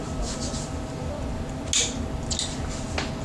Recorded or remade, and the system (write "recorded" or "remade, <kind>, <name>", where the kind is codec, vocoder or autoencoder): recorded